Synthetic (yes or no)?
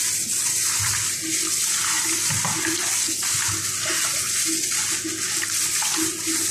no